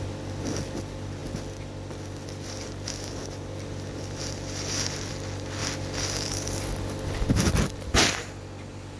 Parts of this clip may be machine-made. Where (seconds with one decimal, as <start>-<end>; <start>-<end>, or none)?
none